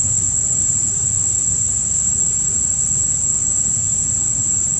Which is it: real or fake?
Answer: real